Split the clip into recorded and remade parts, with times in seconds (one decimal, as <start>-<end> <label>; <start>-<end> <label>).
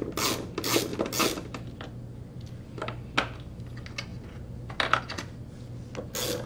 0.0-6.5 recorded